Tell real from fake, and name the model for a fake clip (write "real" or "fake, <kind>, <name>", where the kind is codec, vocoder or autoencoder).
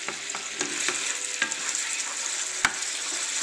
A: real